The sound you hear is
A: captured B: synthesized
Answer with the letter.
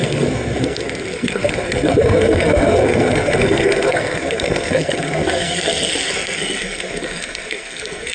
B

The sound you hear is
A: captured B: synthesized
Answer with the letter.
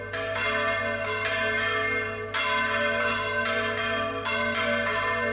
A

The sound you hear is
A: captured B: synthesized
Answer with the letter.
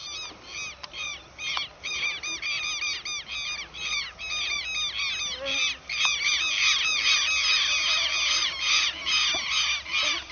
A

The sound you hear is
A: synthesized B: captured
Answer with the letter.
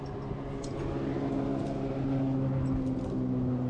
B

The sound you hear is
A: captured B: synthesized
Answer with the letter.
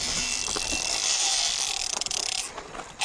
A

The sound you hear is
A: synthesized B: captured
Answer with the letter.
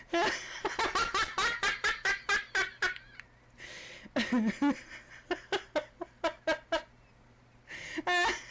B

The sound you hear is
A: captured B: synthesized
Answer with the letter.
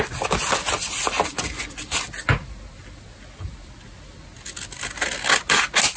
A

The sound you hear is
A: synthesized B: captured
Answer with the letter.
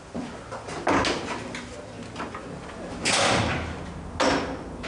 B